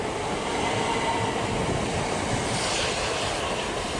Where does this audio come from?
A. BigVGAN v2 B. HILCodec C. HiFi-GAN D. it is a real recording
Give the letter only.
D